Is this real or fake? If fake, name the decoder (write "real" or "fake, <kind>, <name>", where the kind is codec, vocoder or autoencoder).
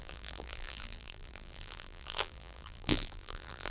fake, vocoder, BigVGAN v2